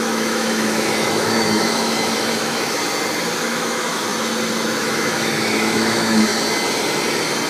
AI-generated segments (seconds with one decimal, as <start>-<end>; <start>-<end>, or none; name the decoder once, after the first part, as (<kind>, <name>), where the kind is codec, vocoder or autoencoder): 0.0-2.8 (autoencoder, DAC-VAE); 3.4-4.1; 4.8-6.3